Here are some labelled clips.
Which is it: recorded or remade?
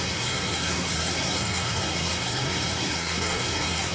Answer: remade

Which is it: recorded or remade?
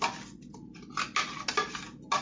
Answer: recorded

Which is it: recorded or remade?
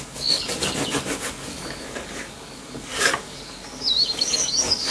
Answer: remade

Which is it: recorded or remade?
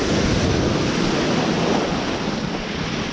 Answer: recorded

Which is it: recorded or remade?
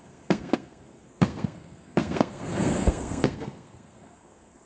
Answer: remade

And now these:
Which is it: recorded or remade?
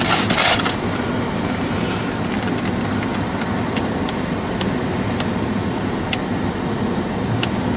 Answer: remade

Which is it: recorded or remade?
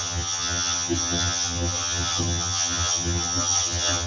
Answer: remade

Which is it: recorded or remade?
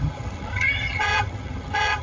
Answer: remade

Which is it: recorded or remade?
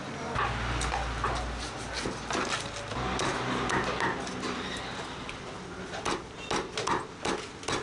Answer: recorded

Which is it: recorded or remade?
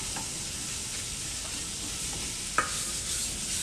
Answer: recorded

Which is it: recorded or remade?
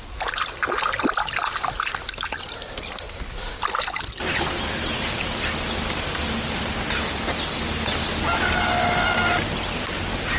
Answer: recorded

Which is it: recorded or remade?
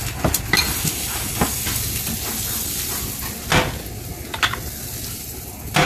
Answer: recorded